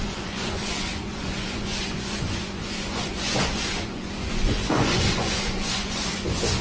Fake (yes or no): yes